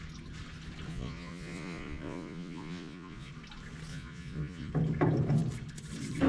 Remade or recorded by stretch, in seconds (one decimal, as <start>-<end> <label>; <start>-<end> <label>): 0.0-0.9 recorded; 0.9-3.3 remade; 3.3-3.9 recorded; 3.9-4.7 remade; 4.7-6.3 recorded